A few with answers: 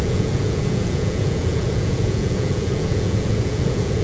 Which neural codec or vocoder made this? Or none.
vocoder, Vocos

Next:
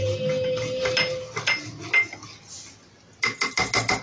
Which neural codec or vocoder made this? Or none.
none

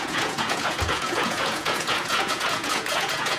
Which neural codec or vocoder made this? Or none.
vocoder, Vocos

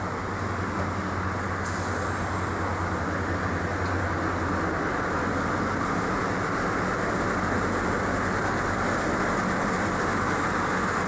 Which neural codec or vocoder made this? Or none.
none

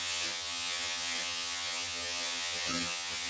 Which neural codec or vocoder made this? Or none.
vocoder, HiFi-GAN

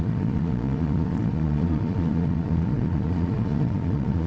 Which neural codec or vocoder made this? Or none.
vocoder, Vocos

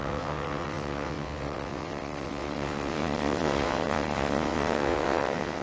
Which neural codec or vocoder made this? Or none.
vocoder, WaveNeXt